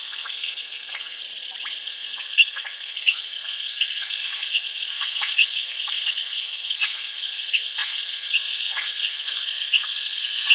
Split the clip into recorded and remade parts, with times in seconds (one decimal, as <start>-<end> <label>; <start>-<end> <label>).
0.0-1.2 remade; 1.2-1.8 recorded; 1.8-10.5 remade